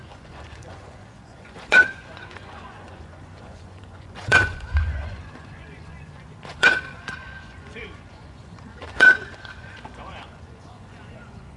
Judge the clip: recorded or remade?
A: remade